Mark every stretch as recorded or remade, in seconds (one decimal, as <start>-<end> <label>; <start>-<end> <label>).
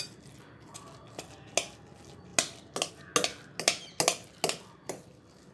0.0-5.5 recorded